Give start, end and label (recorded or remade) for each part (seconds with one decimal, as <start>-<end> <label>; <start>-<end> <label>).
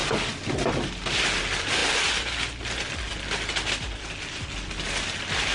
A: 0.0-5.5 recorded